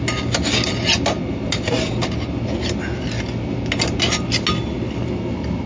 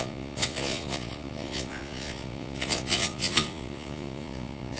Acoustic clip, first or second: first